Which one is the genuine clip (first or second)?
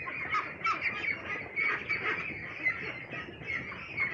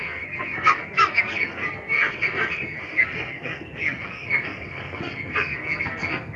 first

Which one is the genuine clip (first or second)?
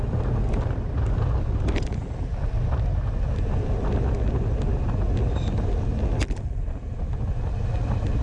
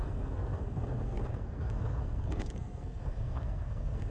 first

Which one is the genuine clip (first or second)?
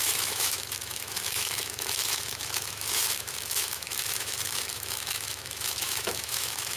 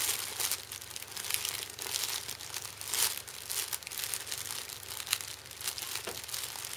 second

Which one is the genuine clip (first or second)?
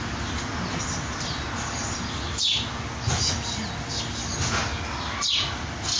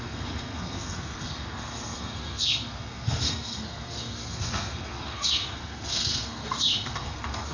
first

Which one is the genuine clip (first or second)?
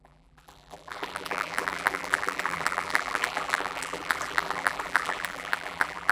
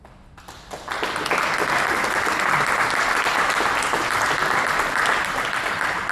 second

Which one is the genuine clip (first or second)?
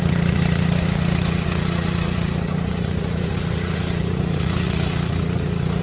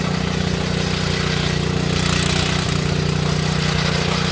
second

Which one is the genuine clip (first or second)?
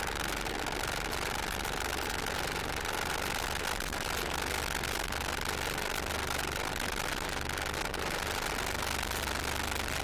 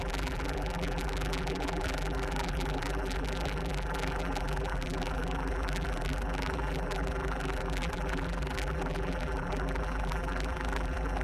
first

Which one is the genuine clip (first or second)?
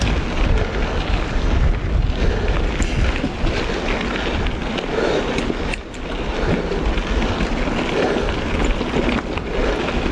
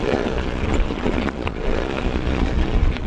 first